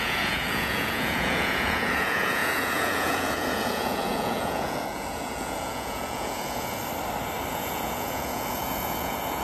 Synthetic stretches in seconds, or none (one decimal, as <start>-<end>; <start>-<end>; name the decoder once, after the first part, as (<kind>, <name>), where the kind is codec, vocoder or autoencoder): 0.0-6.8 (vocoder, Vocos); 7.5-9.4